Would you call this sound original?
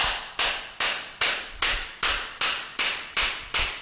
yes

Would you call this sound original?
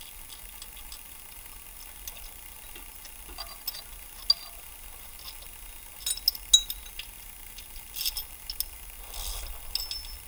yes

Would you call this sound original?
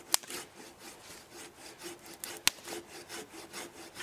yes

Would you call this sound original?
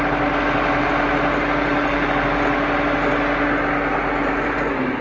yes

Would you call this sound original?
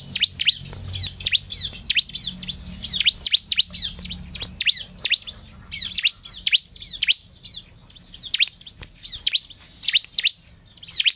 yes